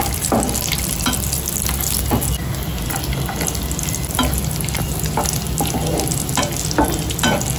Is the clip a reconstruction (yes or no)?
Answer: no